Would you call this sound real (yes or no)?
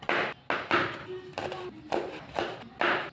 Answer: yes